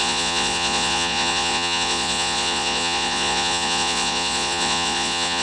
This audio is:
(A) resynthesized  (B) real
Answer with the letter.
A